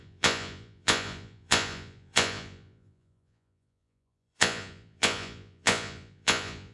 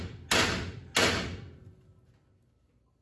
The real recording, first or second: second